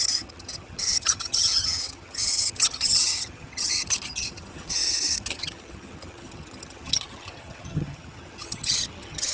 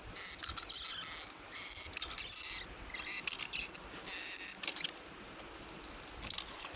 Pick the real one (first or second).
second